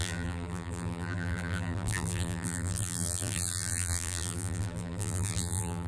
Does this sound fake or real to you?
fake